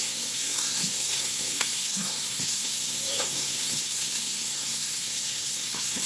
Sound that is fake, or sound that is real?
fake